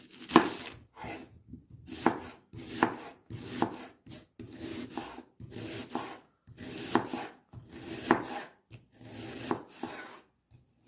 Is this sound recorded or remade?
recorded